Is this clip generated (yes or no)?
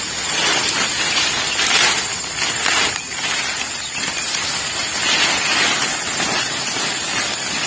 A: no